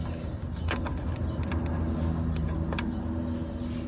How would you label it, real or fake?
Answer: real